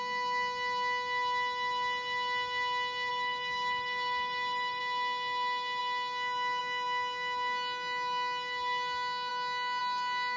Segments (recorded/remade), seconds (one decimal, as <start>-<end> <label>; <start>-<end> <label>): 0.0-3.1 recorded; 3.1-4.8 remade; 4.8-10.4 recorded